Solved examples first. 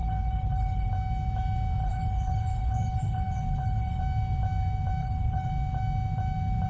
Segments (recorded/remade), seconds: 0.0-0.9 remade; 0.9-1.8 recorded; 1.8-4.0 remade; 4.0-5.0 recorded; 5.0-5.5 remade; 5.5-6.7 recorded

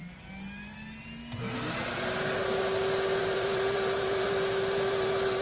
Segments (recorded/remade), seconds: 0.0-3.2 recorded; 3.2-5.4 remade

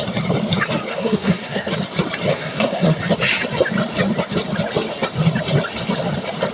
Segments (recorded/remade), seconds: 0.0-0.9 recorded; 0.9-1.7 remade; 1.7-2.3 recorded; 2.3-3.0 remade; 3.0-6.5 recorded

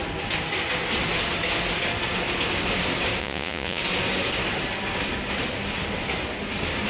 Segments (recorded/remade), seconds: 0.0-3.2 recorded; 3.2-3.8 remade; 3.8-6.9 recorded

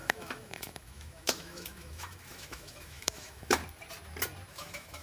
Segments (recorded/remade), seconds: 0.0-3.6 remade; 3.6-4.5 recorded; 4.5-5.0 remade

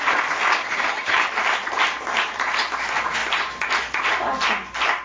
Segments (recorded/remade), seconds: 0.0-0.6 recorded; 0.6-1.3 remade; 1.3-5.0 recorded

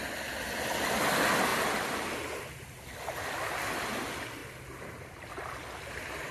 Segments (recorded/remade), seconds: 0.0-6.3 recorded

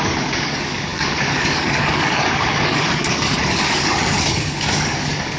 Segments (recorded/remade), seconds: 0.0-5.4 remade